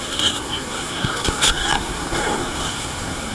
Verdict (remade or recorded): remade